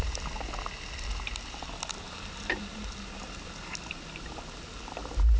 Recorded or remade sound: recorded